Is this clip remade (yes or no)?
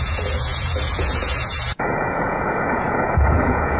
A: yes